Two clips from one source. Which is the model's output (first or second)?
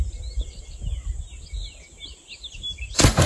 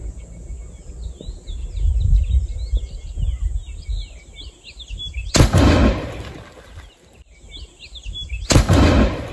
first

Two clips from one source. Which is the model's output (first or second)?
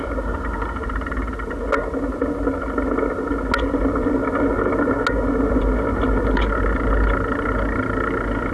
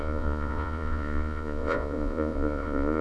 second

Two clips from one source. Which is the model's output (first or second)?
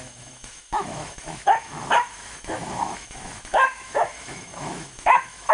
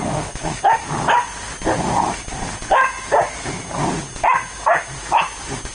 first